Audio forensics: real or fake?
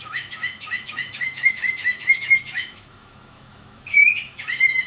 fake